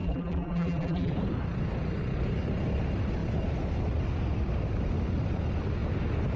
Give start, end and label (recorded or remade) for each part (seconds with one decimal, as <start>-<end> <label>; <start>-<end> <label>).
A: 0.0-1.1 remade; 1.1-6.4 recorded